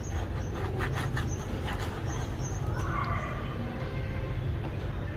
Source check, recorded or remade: recorded